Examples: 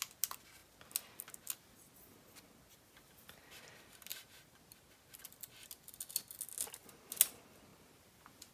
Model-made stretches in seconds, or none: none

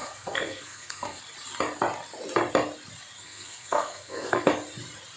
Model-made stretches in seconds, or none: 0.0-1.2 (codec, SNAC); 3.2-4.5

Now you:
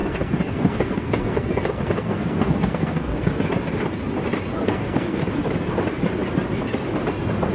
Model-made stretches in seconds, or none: 0.0-3.3 (codec, SNAC); 4.5-5.2

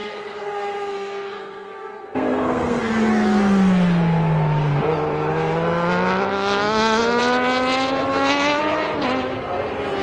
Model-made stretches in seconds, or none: 0.0-2.8 (codec, SNAC); 6.3-7.2; 8.1-8.6

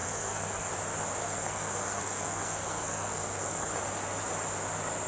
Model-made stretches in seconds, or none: 0.0-0.7 (codec, SNAC); 1.2-3.7